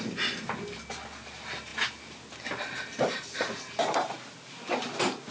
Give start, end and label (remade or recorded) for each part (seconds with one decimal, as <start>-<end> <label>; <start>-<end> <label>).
0.0-5.3 recorded